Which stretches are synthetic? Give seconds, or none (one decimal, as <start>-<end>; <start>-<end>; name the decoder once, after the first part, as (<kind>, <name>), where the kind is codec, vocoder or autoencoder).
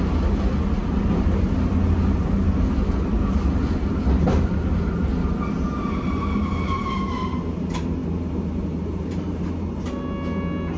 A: 8.0-9.5 (vocoder, BigVGAN v2)